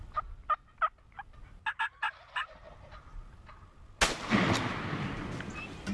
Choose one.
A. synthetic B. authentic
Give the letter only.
B